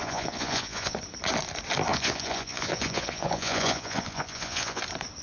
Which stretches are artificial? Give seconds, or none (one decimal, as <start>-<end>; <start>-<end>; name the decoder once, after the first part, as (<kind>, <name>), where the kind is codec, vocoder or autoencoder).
0.0-1.0 (vocoder, Vocos); 1.9-4.8